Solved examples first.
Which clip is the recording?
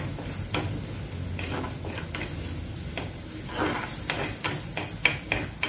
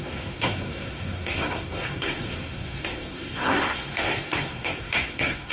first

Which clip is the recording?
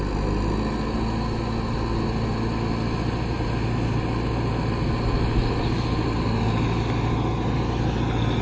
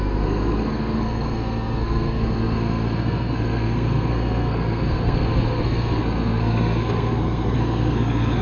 first